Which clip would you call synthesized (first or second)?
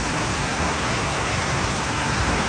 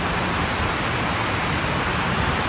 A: first